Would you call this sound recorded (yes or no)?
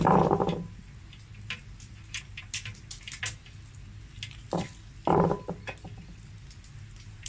yes